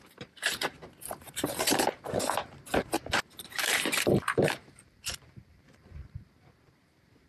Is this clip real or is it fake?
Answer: fake